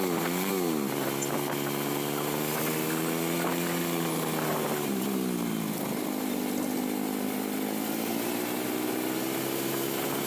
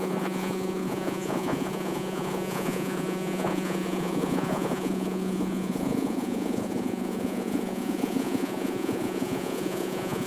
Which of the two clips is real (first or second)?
first